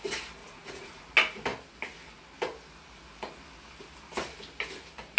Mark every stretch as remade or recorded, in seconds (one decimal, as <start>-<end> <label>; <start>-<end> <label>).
0.0-0.4 recorded; 0.4-1.0 remade; 1.0-5.2 recorded